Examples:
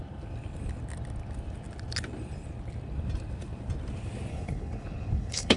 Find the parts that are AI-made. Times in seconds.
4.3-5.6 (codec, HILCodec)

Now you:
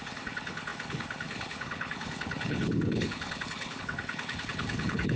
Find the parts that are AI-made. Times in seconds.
0.0-5.2 (codec, HILCodec)

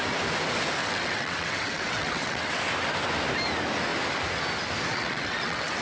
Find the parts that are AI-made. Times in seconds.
0.8-2.5 (vocoder, WaveNeXt); 4.9-5.8

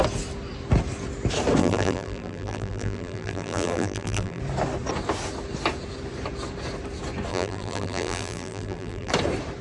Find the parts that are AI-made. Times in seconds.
1.6-4.4 (vocoder, BigVGAN v2); 7.3-9.1

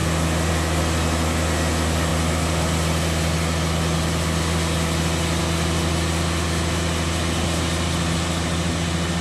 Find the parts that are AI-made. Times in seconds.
none